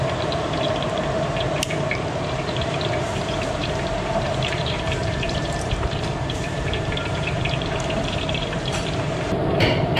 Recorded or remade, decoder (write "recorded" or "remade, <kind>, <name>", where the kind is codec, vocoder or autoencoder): remade, vocoder, BigVGAN v2